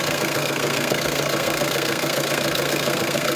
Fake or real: fake